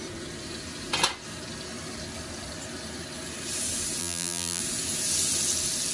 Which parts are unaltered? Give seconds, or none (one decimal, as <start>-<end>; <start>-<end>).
0.0-4.0; 4.6-5.9